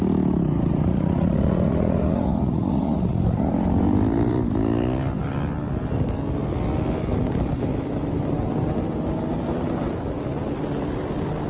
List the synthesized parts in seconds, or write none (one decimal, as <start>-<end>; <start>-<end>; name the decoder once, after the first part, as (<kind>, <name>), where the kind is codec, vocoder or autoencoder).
0.7-3.5 (vocoder, Vocos)